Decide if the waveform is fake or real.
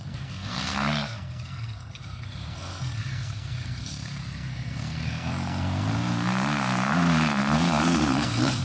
fake